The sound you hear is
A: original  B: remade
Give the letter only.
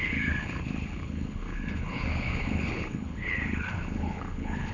B